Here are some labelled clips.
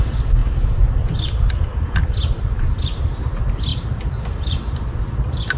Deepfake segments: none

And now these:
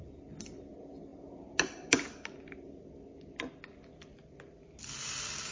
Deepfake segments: none

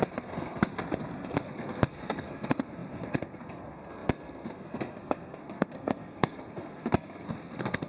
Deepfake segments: 0.0-0.7 (codec, SNAC); 1.4-7.9

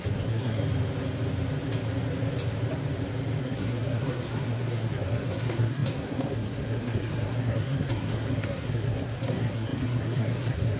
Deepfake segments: 0.0-0.6 (codec, SNAC); 3.4-10.8

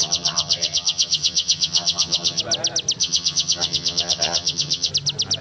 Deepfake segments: 0.0-2.4 (vocoder, HiFi-GAN); 3.0-4.9